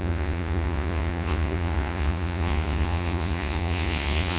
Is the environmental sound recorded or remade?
remade